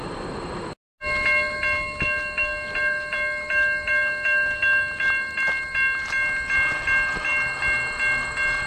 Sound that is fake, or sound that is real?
real